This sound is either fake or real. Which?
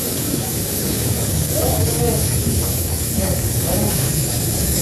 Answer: fake